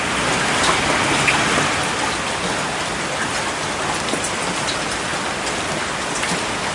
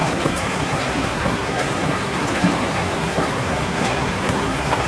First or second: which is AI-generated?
second